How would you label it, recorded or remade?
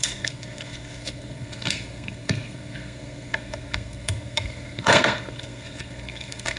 remade